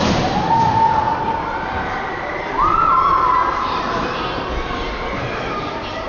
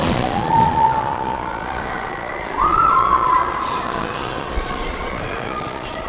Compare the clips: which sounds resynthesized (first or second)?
second